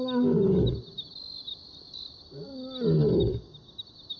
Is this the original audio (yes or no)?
yes